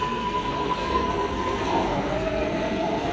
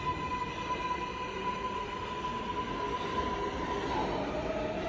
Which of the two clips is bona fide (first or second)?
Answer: second